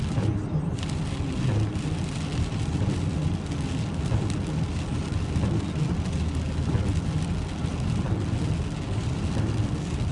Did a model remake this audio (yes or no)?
no